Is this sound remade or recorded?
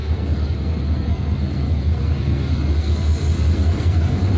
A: remade